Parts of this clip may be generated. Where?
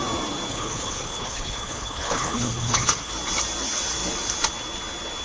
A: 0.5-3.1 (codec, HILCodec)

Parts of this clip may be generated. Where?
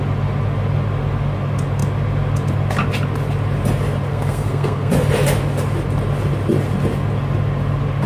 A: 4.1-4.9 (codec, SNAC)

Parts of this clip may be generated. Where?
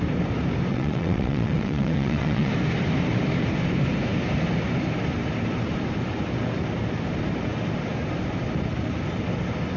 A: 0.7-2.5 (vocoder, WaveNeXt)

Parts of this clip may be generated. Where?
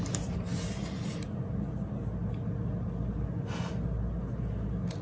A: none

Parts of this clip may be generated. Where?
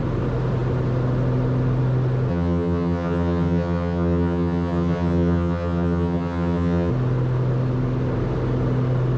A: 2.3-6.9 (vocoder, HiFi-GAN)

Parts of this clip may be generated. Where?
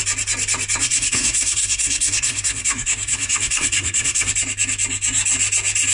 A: 0.8-4.3 (codec, SNAC)